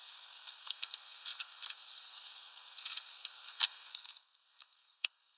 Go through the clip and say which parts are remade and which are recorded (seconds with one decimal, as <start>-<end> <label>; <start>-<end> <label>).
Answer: 0.0-5.4 remade